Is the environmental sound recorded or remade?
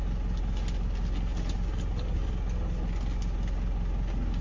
recorded